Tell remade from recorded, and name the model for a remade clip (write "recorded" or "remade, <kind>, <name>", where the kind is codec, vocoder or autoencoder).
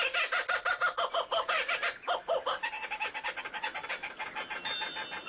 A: recorded